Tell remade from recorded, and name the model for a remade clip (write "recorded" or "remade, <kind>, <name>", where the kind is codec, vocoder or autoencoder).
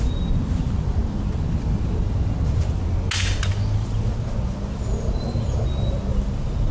recorded